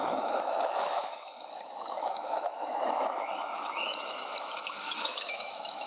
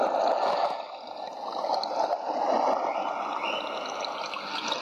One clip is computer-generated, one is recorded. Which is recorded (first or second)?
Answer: second